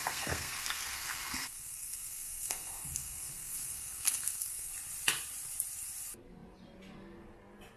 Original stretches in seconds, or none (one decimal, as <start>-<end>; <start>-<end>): 4.7-7.8